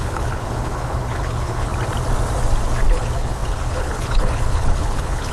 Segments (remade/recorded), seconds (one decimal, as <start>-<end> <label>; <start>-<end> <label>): 0.0-1.7 remade; 1.7-2.9 recorded; 2.9-5.3 remade